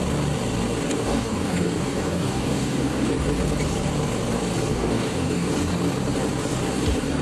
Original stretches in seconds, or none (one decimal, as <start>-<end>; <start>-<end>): 0.0-0.9; 3.1-4.7; 5.5-7.2